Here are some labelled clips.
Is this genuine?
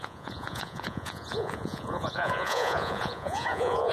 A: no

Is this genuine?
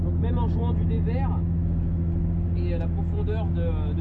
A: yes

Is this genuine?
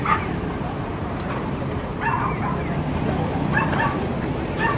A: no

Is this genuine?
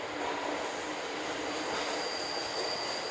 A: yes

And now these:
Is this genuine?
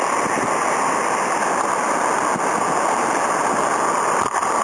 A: yes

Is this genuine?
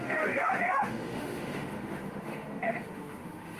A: no